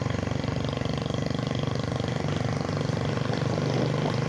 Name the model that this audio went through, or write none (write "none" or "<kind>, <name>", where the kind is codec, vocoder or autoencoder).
none